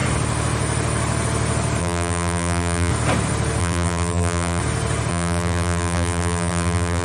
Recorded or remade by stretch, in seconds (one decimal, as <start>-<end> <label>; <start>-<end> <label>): 0.0-1.8 recorded; 1.8-2.9 remade; 2.9-3.6 recorded; 3.6-4.6 remade; 4.6-5.1 recorded; 5.1-7.0 remade